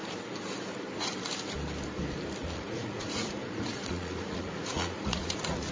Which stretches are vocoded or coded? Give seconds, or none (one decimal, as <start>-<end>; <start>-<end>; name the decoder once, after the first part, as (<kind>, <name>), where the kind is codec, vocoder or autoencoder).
2.4-5.7 (vocoder, Vocos)